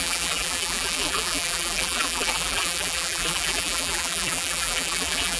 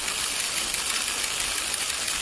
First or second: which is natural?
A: second